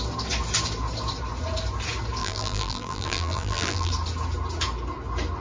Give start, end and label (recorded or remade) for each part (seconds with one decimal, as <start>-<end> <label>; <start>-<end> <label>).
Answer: 0.0-2.2 recorded; 2.2-3.9 remade; 3.9-5.4 recorded